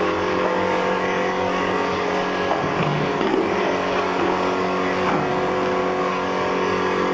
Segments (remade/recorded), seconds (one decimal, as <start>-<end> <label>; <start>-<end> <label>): 0.0-5.3 remade; 5.3-6.0 recorded; 6.0-7.1 remade